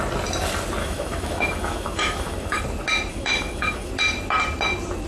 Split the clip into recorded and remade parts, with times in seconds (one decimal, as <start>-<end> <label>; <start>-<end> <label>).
0.0-0.8 recorded; 0.8-2.6 remade; 2.6-3.1 recorded; 3.1-3.9 remade; 3.9-5.1 recorded